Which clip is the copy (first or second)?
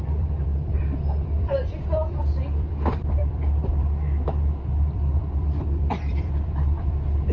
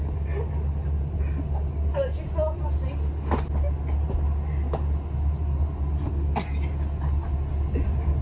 first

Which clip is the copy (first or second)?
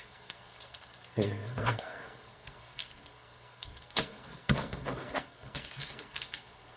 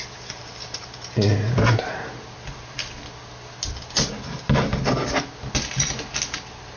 first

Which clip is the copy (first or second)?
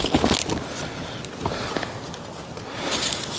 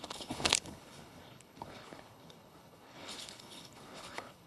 second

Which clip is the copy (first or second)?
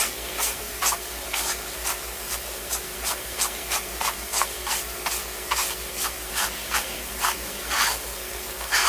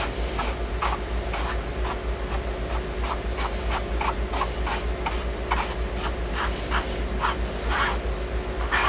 first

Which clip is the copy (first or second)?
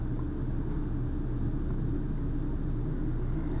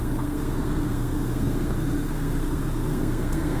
second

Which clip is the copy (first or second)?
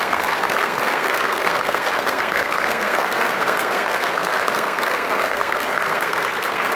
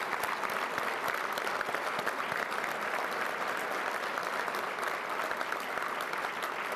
first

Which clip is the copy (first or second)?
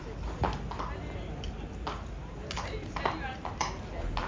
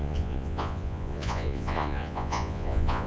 second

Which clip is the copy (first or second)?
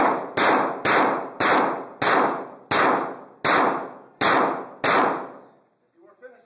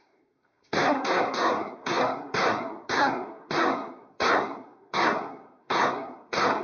second